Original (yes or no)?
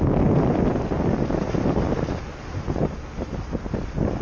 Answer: yes